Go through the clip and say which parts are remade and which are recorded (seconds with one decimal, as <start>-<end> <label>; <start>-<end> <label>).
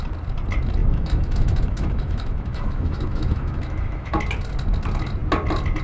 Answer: 0.0-0.8 recorded; 0.8-4.2 remade; 4.2-5.8 recorded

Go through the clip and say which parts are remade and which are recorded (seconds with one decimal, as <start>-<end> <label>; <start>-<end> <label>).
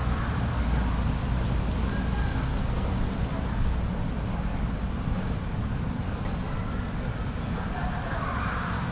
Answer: 0.0-2.5 recorded; 2.5-3.0 remade; 3.0-8.9 recorded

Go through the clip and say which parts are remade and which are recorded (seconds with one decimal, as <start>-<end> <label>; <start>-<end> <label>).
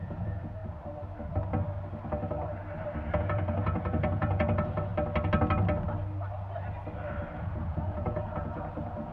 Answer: 0.0-0.6 remade; 0.6-3.2 recorded; 3.2-4.9 remade; 4.9-7.4 recorded; 7.4-9.1 remade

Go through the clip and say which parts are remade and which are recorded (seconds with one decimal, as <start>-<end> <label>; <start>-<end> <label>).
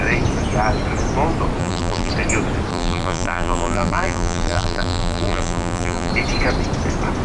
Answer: 0.0-1.6 recorded; 1.6-2.1 remade; 2.1-2.7 recorded; 2.7-6.1 remade; 6.1-7.2 recorded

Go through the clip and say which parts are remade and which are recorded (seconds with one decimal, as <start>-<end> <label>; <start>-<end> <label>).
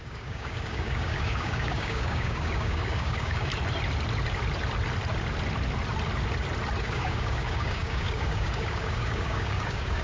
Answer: 0.0-3.5 remade; 3.5-6.8 recorded; 6.8-10.0 remade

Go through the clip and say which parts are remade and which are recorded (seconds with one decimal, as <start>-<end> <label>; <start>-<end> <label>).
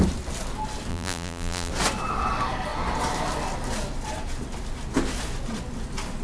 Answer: 0.0-0.9 recorded; 0.9-1.7 remade; 1.7-6.2 recorded